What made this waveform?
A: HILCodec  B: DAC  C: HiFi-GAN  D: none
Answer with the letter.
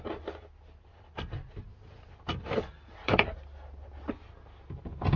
D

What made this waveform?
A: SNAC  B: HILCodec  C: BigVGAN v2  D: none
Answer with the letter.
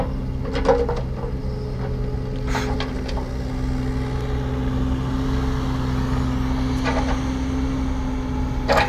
D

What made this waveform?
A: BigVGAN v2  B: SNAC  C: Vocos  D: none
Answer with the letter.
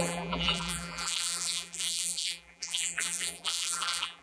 A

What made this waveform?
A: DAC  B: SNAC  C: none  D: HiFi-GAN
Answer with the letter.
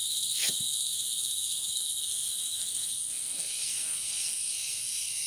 B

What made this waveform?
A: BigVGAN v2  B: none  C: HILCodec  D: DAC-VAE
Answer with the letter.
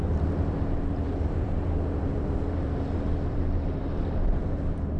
A